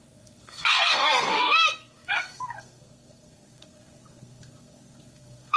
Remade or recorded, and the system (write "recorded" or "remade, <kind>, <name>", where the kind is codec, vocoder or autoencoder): remade, codec, SNAC